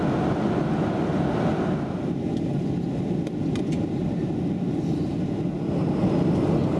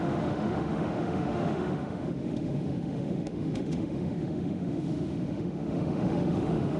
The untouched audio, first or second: first